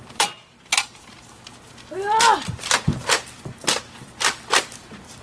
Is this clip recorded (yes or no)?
no